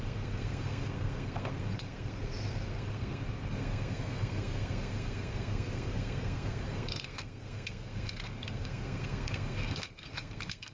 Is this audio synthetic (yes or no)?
yes